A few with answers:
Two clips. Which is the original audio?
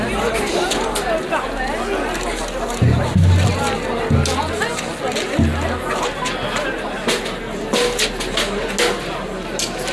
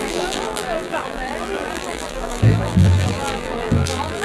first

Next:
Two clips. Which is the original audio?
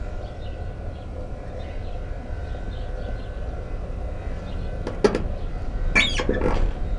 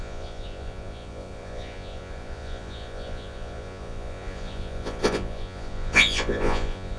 first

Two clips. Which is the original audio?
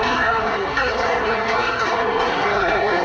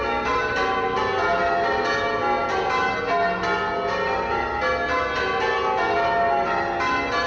second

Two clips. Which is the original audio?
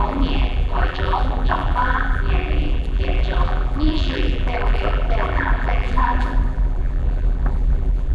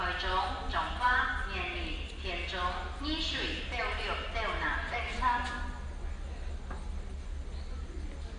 second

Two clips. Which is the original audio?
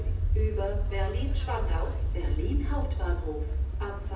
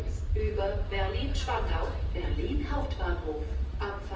first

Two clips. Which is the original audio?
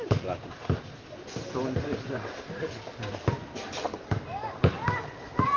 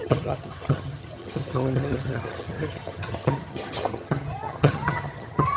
first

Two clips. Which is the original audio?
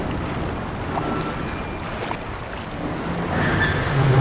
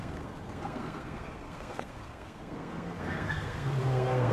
first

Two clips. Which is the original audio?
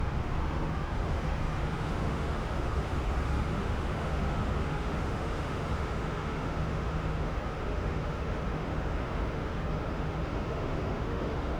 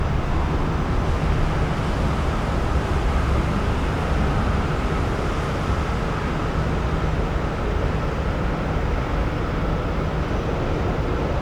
second